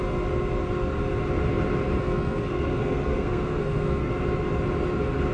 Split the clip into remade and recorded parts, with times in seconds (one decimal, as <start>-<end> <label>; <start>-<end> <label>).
0.0-2.0 recorded; 2.0-4.1 remade; 4.1-5.3 recorded